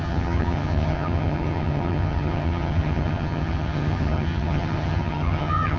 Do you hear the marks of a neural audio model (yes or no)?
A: yes